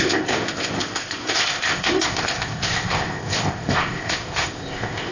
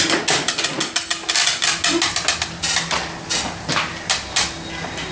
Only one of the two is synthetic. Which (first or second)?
first